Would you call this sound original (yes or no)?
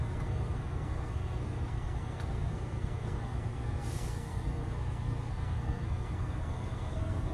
no